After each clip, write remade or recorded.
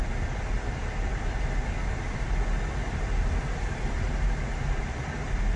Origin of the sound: recorded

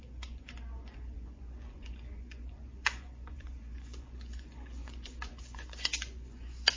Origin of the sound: remade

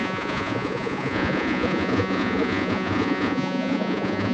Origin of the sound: remade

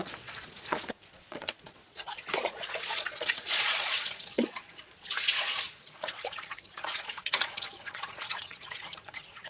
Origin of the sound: remade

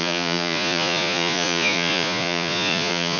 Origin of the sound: remade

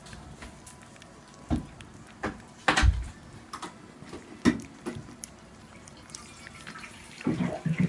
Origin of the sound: recorded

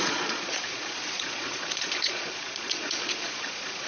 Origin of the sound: remade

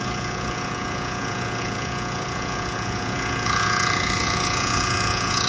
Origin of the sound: remade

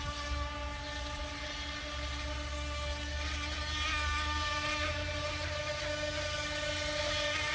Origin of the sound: recorded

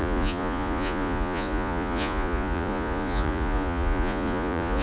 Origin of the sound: remade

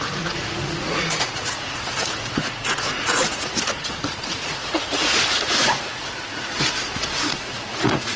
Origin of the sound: remade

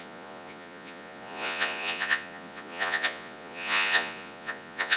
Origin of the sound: remade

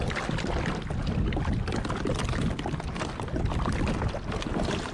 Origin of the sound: recorded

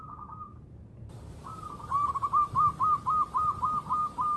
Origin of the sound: recorded